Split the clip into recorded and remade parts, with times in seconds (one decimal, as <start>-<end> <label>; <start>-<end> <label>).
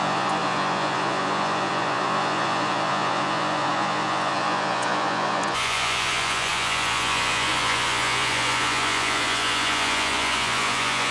0.0-11.1 remade